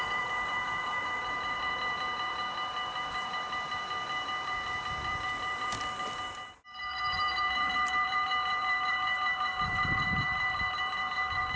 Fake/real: fake